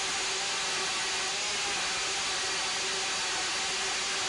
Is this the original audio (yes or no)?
yes